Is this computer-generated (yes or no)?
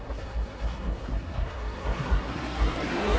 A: yes